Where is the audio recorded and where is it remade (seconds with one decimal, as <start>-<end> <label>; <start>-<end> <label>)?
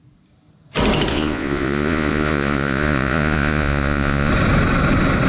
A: 0.0-1.1 recorded; 1.1-4.3 remade; 4.3-5.3 recorded